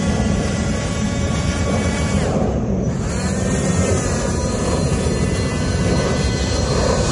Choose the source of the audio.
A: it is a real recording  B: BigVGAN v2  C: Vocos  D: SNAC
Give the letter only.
B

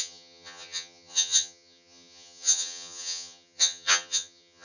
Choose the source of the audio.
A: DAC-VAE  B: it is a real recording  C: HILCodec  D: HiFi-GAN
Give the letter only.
D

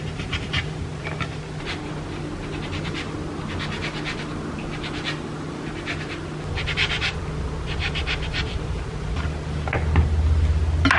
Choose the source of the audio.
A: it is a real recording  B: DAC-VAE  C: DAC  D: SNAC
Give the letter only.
A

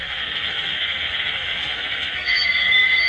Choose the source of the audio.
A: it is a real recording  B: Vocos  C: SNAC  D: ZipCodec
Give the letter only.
C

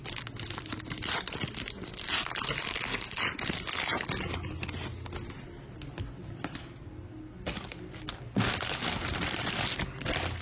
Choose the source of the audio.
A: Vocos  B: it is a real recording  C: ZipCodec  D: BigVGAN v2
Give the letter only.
B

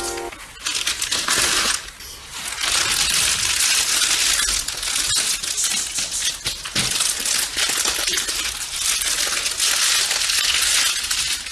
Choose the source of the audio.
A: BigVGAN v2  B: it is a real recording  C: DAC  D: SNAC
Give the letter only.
B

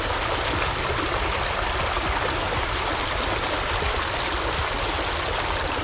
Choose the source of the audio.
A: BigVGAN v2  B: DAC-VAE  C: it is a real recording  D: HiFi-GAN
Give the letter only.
C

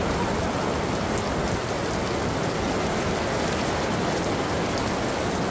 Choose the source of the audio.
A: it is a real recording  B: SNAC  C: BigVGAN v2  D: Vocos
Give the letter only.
A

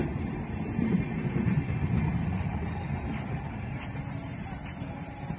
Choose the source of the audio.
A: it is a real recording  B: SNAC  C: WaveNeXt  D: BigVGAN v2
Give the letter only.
D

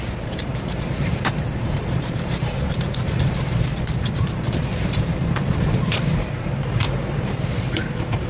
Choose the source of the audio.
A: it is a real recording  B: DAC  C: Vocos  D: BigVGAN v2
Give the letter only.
D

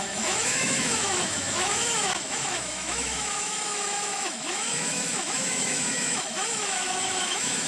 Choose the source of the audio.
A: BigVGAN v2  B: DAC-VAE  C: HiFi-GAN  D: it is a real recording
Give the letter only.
B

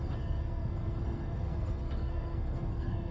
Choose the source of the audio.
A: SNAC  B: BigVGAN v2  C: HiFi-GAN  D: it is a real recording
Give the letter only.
A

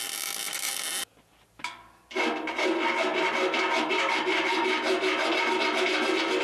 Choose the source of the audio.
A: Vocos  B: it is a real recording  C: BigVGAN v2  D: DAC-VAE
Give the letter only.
B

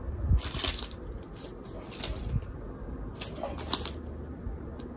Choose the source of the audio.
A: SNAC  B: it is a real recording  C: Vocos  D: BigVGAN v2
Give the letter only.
B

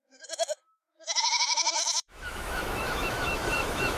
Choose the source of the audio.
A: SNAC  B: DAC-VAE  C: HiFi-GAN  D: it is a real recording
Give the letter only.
B